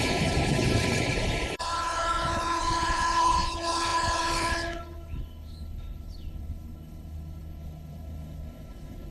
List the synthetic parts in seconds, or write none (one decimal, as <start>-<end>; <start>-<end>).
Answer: 0.0-9.1